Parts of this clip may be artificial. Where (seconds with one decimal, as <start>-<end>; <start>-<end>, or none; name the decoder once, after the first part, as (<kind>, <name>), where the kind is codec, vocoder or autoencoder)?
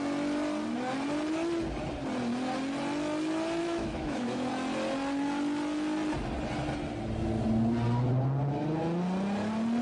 3.6-4.5 (autoencoder, DAC-VAE)